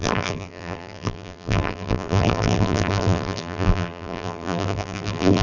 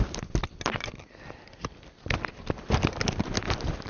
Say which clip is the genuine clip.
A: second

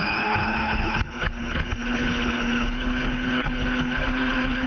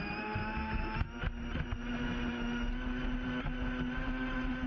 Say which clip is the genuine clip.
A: second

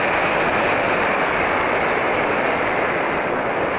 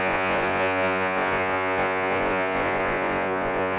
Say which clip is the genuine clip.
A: first